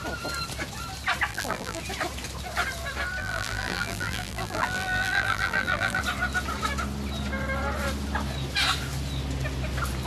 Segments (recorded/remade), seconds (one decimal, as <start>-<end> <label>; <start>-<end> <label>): 0.0-1.3 recorded; 1.3-1.8 remade; 1.8-3.2 recorded; 3.2-6.0 remade; 6.0-10.1 recorded